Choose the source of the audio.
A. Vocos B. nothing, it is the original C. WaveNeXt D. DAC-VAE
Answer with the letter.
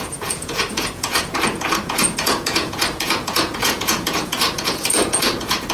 A